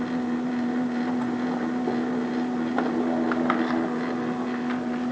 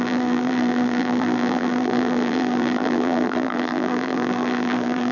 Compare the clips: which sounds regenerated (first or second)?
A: second